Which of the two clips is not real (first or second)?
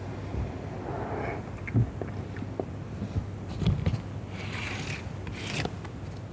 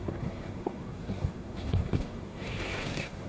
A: second